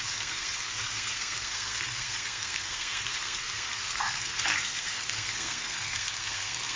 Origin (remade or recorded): remade